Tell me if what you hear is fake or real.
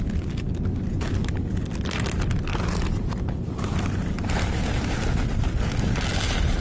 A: real